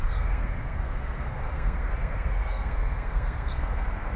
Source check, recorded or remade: remade